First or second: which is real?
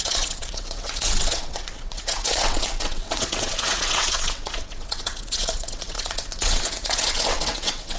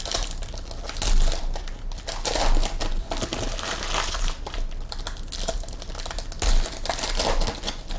second